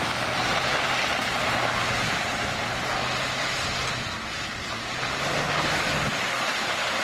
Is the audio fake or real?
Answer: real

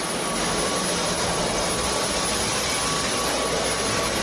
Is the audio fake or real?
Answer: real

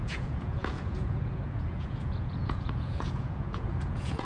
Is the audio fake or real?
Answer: fake